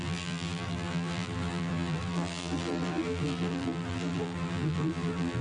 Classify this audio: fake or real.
fake